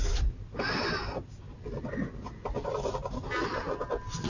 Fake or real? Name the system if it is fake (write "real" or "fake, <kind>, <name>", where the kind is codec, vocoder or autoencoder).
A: real